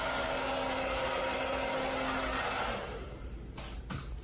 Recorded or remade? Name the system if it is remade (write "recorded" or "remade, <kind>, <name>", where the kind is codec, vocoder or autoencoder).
recorded